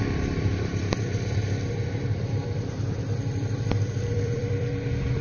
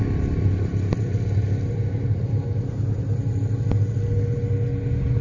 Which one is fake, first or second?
first